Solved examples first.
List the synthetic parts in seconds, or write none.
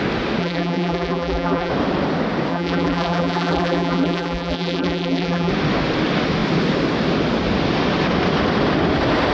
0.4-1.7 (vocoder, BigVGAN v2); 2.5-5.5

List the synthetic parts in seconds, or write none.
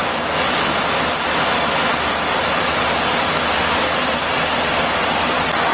none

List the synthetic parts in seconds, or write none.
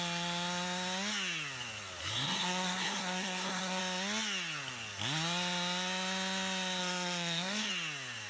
2.0-3.8 (codec, SNAC); 6.8-7.7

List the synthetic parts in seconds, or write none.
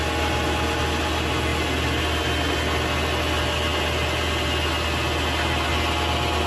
none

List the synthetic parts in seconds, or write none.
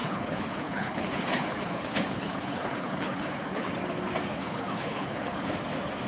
0.0-3.7 (codec, HILCodec); 4.4-5.5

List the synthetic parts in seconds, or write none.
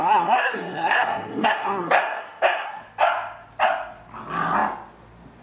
0.0-2.8 (codec, SNAC)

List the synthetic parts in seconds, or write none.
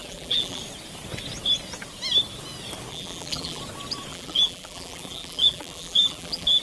0.0-0.6 (vocoder, BigVGAN v2); 2.9-3.6; 4.1-6.6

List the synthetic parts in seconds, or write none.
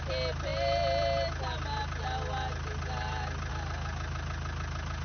none